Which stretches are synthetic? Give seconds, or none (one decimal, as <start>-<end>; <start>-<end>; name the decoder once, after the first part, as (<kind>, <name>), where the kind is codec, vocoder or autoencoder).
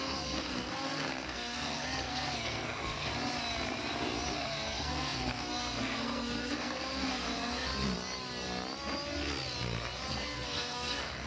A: 0.0-3.1 (codec, SNAC); 4.3-7.7; 10.1-11.3